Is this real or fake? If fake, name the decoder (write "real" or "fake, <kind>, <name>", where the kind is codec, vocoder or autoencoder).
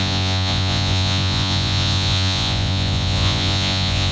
fake, vocoder, Vocos